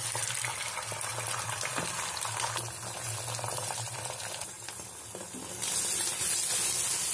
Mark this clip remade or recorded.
recorded